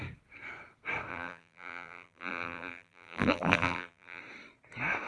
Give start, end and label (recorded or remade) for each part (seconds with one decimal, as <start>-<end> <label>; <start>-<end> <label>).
0.0-1.1 recorded; 1.1-4.2 remade; 4.2-5.1 recorded